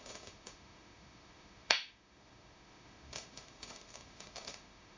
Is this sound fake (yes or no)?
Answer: yes